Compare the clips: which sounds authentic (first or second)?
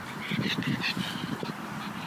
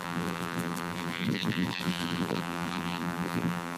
first